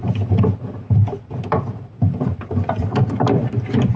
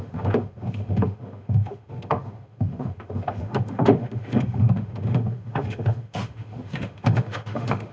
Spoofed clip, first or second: second